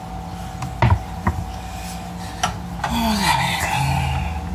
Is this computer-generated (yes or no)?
no